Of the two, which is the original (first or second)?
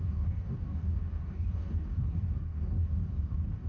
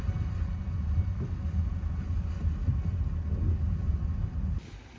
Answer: second